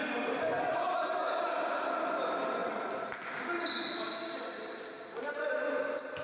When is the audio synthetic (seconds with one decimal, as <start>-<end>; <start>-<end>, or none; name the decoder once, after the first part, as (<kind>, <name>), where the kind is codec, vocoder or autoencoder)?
none